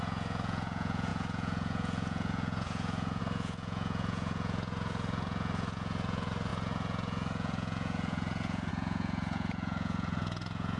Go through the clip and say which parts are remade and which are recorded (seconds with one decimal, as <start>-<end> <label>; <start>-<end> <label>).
0.0-10.8 remade